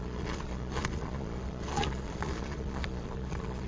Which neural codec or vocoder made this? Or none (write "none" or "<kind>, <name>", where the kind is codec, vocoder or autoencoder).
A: vocoder, Vocos